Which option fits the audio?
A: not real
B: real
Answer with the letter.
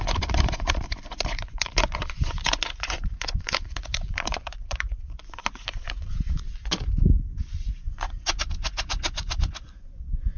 A